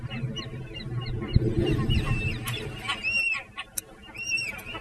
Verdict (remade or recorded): remade